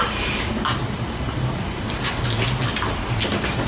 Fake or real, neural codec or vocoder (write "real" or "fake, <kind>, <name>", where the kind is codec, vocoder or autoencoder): real